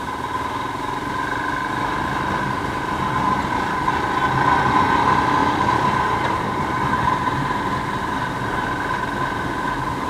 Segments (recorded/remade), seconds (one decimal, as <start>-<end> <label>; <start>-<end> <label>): 0.0-5.4 recorded; 5.4-7.6 remade; 7.6-10.1 recorded